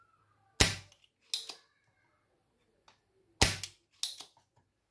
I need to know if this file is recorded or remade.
recorded